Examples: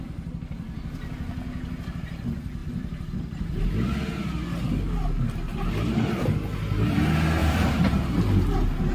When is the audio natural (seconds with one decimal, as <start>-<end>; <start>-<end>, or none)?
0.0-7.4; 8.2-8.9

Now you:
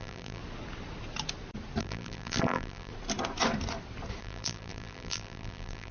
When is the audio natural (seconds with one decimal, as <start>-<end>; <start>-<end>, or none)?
0.4-1.8; 2.9-4.2

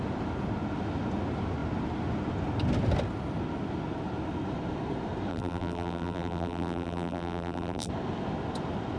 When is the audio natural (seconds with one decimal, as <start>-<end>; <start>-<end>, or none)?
0.0-5.3; 7.9-9.0

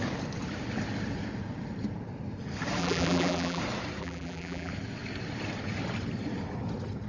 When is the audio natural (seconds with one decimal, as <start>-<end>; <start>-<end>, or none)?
0.0-2.8; 3.6-4.0; 4.7-7.1

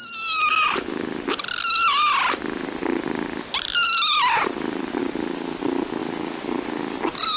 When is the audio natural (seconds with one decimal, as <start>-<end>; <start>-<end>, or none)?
0.0-3.7; 5.0-6.0; 7.0-7.4

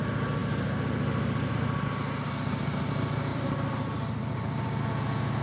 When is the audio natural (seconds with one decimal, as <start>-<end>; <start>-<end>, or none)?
0.0-3.3; 4.8-5.4